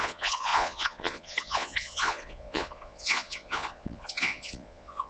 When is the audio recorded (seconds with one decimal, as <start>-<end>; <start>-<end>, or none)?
none